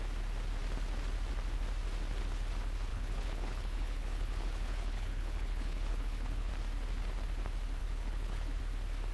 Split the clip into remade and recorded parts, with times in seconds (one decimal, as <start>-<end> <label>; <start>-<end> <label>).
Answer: 0.0-2.9 recorded; 2.9-6.5 remade; 6.5-7.8 recorded; 7.8-8.6 remade; 8.6-9.1 recorded